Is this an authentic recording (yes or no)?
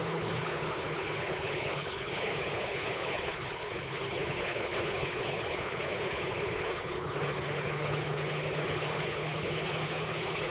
no